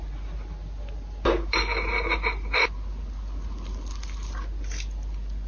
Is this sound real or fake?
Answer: real